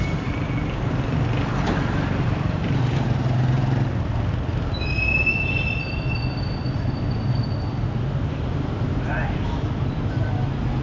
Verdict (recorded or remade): recorded